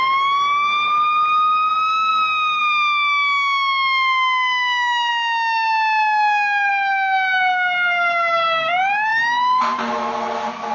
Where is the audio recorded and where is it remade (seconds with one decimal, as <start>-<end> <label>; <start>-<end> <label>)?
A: 0.0-10.7 recorded